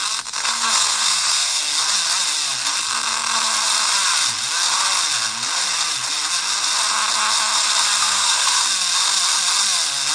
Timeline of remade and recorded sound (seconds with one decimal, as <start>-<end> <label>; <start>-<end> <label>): 0.0-0.4 recorded; 0.4-1.6 remade; 1.6-8.0 recorded; 8.0-8.6 remade; 8.6-10.1 recorded